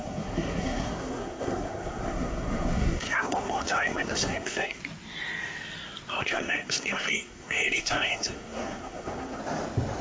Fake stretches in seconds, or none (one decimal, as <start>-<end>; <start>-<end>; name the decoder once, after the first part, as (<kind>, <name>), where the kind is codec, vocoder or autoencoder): 0.0-4.8 (codec, SNAC); 6.2-9.4